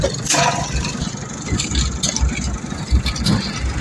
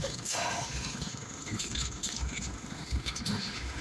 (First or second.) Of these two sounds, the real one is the first